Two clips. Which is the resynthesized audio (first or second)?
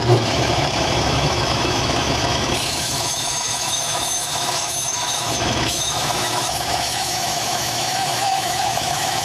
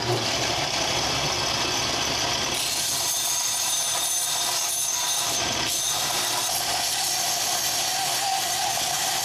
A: first